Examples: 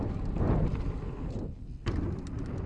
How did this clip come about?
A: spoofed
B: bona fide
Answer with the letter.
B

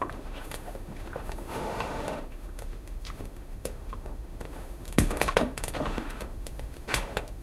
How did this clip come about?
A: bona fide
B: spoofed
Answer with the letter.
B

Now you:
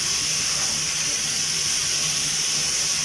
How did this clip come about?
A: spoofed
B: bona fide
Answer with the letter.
B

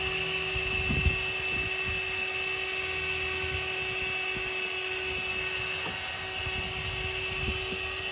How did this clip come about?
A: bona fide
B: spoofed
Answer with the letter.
A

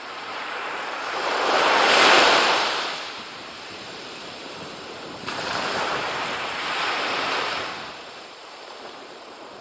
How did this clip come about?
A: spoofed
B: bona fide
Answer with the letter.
A